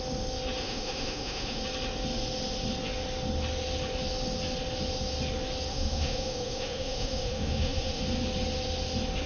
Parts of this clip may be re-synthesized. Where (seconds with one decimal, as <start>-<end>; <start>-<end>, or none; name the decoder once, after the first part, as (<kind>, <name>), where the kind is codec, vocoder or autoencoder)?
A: 0.6-1.6 (autoencoder, DAC-VAE); 5.7-8.0